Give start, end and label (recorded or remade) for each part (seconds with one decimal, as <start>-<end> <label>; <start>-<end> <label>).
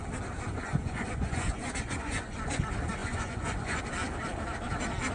0.0-0.5 recorded; 0.5-2.6 remade; 2.6-3.0 recorded; 3.0-3.8 remade; 3.8-5.1 recorded